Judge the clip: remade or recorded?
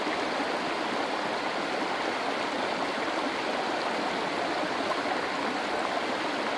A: recorded